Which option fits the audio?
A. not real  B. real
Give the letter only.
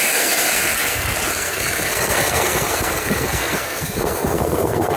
A